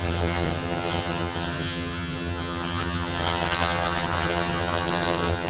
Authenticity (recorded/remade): remade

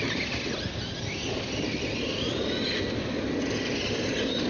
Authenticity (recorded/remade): recorded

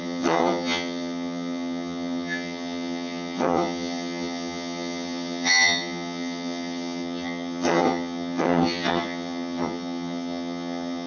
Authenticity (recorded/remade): remade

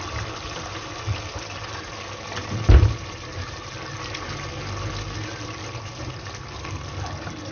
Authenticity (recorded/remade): recorded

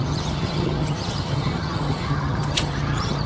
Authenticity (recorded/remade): remade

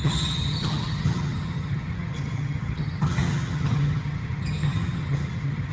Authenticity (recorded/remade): remade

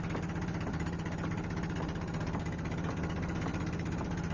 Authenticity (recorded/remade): recorded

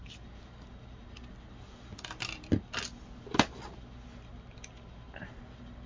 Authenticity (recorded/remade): recorded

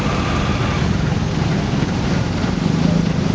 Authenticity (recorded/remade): recorded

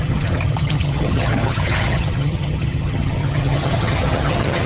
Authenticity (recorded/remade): remade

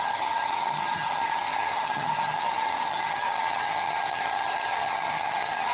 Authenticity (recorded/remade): remade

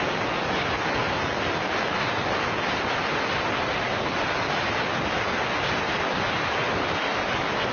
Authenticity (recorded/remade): recorded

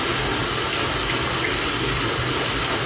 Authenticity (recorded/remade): recorded